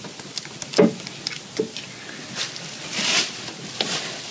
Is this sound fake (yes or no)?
no